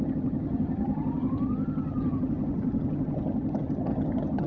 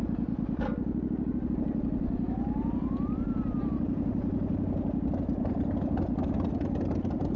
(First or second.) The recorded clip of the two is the second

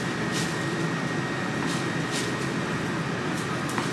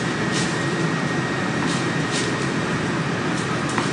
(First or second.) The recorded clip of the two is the first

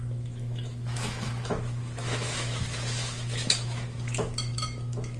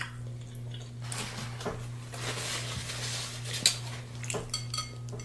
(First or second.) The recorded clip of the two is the second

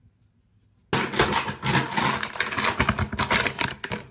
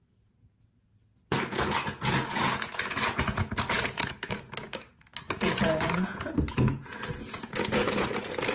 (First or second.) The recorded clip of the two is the first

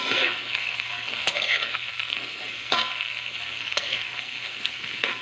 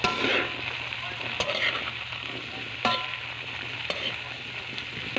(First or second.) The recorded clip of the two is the second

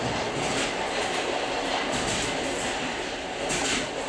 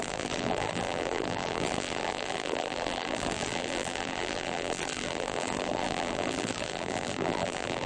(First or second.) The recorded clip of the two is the first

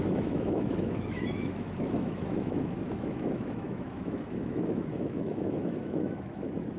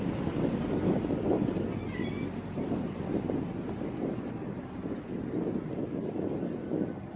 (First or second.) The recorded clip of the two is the second